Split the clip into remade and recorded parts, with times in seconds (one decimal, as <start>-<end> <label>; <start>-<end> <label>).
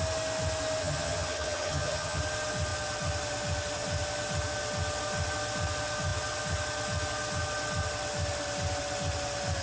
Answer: 0.0-0.8 recorded; 0.8-2.2 remade; 2.2-9.6 recorded